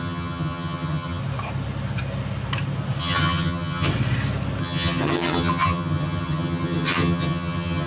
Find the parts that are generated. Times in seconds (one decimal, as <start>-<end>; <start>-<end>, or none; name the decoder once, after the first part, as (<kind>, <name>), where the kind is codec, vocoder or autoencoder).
0.0-1.2 (vocoder, HiFi-GAN); 3.0-3.9; 4.6-7.9